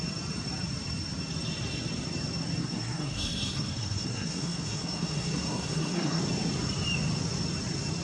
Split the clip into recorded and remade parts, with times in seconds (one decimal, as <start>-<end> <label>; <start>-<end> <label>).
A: 0.0-2.6 recorded; 2.6-6.2 remade; 6.2-8.0 recorded